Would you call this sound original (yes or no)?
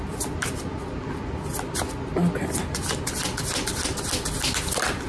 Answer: no